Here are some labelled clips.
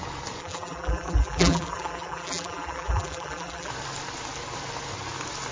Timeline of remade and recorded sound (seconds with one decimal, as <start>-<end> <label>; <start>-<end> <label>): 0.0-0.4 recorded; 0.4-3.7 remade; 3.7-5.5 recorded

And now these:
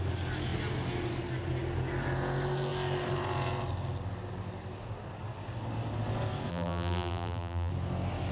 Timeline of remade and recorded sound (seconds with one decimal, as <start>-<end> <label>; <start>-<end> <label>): 0.0-6.5 recorded; 6.5-7.7 remade; 7.7-8.3 recorded

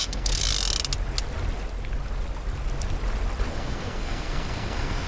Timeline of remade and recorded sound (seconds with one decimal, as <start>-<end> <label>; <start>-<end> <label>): 0.0-0.4 remade; 0.4-3.5 recorded; 3.5-5.1 remade